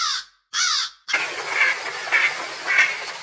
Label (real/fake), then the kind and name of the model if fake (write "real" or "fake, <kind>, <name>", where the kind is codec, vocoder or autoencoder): real